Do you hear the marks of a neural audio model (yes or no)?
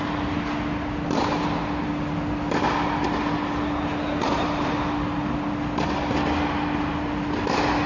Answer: no